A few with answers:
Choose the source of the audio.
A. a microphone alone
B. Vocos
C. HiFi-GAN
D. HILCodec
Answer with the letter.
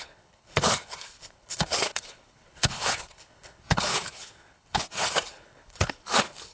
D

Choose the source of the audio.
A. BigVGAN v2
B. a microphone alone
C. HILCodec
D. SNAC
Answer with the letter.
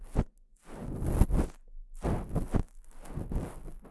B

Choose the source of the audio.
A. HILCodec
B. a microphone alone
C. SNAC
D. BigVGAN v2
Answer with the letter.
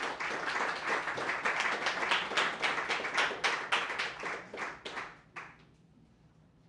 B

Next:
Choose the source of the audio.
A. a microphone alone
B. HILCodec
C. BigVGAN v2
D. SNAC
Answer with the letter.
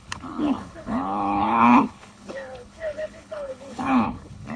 B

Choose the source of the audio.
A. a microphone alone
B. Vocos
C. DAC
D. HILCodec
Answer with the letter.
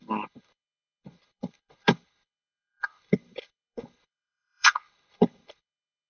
D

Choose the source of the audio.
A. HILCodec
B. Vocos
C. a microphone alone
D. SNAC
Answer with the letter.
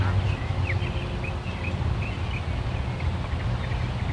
C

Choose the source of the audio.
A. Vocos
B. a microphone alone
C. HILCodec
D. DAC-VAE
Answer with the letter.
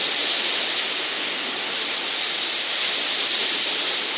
B